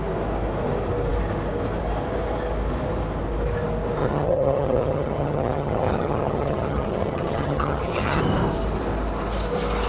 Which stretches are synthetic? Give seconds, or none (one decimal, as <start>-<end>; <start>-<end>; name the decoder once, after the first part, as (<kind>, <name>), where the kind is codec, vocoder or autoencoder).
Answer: 4.0-8.2 (vocoder, HiFi-GAN)